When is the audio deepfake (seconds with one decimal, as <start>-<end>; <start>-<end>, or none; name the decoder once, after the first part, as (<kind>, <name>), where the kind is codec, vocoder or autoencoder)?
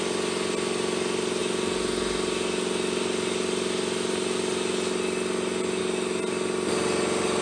none